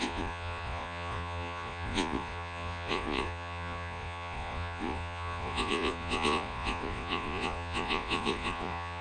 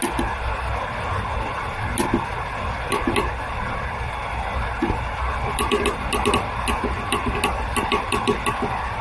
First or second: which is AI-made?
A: first